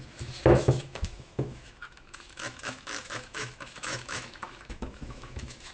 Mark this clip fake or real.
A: fake